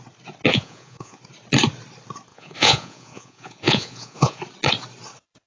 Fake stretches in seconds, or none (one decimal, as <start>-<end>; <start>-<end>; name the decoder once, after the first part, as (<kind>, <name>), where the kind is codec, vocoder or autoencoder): 0.5-1.2 (vocoder, Vocos); 2.3-4.4